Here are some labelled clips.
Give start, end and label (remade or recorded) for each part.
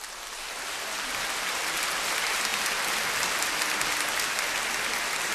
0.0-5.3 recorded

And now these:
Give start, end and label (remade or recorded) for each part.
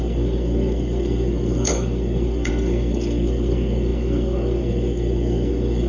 0.0-5.9 remade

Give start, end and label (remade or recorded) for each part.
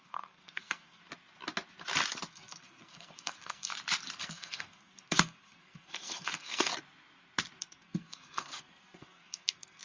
0.0-1.0 remade; 1.0-2.3 recorded; 2.3-3.7 remade; 3.7-4.2 recorded; 4.2-6.7 remade; 6.7-7.6 recorded; 7.6-9.8 remade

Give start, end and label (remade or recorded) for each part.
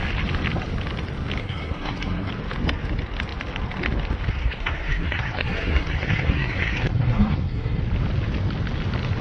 0.0-1.4 recorded; 1.4-2.3 remade; 2.3-4.3 recorded; 4.3-7.8 remade; 7.8-9.2 recorded